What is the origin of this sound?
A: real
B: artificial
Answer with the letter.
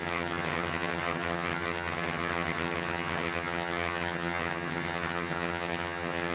B